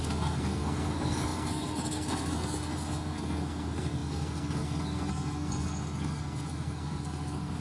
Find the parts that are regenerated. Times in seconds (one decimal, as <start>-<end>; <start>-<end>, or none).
0.0-7.6